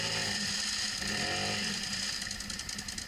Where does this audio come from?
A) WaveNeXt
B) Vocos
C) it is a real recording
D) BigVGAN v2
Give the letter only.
C